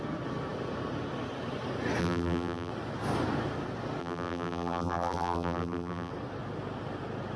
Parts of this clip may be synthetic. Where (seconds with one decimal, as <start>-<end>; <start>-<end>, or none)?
2.0-2.7; 4.0-6.1